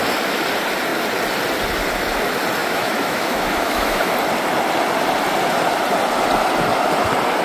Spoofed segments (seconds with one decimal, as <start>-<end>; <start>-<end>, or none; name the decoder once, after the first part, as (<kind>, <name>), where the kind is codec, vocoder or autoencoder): 2.6-4.1 (autoencoder, DAC-VAE)